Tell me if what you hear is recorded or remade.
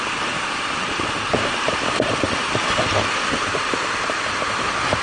remade